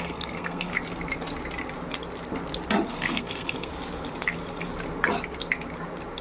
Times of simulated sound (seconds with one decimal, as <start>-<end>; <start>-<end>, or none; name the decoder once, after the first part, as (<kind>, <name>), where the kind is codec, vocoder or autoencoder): 0.0-0.7 (codec, SNAC); 2.9-3.7

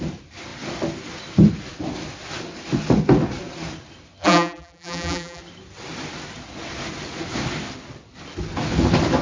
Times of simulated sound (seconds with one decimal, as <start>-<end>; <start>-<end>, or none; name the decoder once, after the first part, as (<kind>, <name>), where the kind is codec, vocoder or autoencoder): 4.2-5.4 (vocoder, BigVGAN v2)